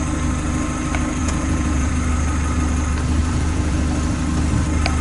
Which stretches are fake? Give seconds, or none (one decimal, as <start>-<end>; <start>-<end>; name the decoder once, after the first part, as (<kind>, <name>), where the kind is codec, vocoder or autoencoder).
1.2-1.9 (vocoder, Vocos); 3.2-3.8